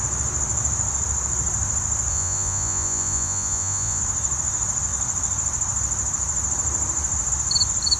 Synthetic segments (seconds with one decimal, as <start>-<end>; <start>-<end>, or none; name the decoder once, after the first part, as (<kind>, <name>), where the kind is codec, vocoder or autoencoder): 2.1-4.0 (vocoder, Vocos)